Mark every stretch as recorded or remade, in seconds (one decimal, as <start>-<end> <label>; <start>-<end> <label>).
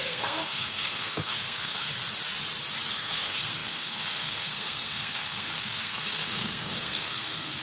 0.0-2.0 remade; 2.0-2.9 recorded; 2.9-7.6 remade